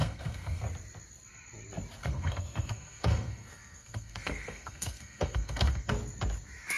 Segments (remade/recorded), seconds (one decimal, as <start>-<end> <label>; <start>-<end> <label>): 0.0-0.6 remade; 0.6-2.0 recorded; 2.0-5.9 remade; 5.9-6.8 recorded